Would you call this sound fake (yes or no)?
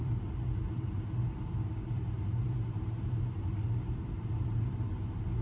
yes